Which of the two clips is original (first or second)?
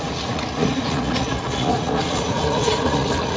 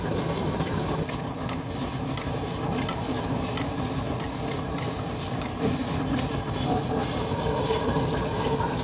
second